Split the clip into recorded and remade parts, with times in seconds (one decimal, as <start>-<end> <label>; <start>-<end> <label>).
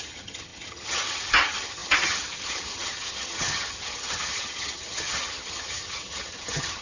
0.0-6.8 remade